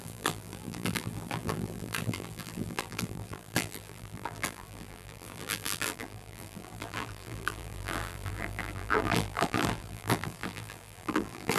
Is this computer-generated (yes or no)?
yes